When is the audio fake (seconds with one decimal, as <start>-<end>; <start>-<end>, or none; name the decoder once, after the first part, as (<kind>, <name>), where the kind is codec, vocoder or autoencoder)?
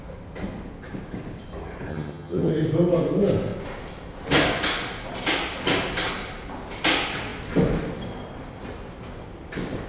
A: 1.9-2.5 (vocoder, HiFi-GAN)